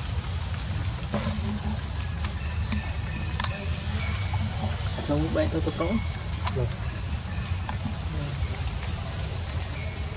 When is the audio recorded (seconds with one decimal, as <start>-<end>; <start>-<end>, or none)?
0.0-10.2